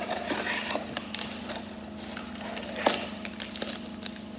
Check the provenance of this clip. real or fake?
real